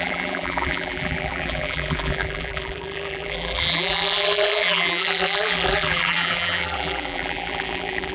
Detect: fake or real fake